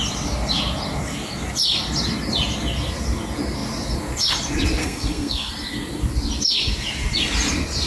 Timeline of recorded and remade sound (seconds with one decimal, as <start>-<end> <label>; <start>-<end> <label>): 0.0-4.8 recorded; 4.8-5.5 remade; 5.5-7.9 recorded